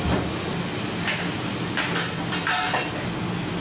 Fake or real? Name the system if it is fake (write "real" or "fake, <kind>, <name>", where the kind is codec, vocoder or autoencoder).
real